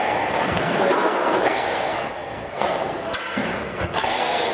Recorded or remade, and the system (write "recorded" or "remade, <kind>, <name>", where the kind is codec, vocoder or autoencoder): remade, codec, SNAC